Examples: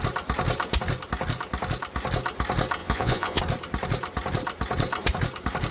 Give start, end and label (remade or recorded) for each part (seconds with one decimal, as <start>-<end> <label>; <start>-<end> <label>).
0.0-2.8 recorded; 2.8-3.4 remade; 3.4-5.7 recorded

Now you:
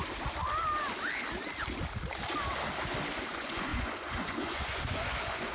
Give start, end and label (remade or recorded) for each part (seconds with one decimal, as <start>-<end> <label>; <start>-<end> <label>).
0.0-3.3 recorded; 3.3-5.5 remade

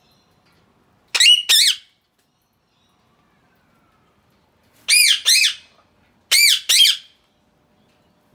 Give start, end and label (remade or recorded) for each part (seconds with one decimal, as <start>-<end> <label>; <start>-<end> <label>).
0.0-8.3 recorded

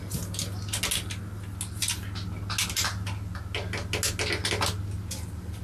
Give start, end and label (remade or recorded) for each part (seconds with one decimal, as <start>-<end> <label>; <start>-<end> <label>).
0.0-5.6 recorded

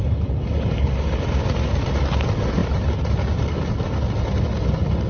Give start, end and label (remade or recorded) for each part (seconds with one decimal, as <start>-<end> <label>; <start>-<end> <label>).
0.0-5.1 recorded

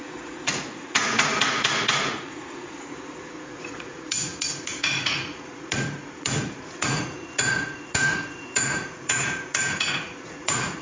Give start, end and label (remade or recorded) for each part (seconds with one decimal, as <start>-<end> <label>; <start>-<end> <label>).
0.0-10.8 remade

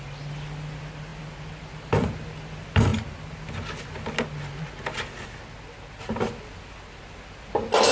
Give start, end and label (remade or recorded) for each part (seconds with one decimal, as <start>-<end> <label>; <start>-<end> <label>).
0.0-7.9 recorded